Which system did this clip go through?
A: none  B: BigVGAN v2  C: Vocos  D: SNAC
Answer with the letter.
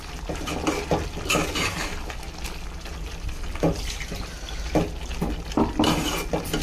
A